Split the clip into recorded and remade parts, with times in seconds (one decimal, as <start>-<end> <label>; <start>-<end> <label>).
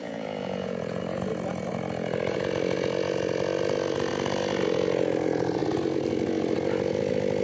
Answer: 0.0-1.0 remade; 1.0-7.4 recorded